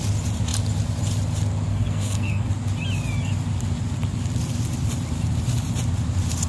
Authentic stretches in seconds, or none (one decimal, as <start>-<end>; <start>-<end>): 0.0-1.7; 2.5-6.5